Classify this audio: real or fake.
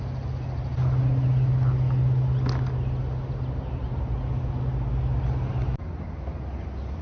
real